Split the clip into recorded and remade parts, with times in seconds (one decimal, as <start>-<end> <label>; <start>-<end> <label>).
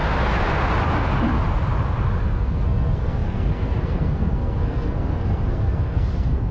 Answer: 0.0-2.2 recorded; 2.2-6.5 remade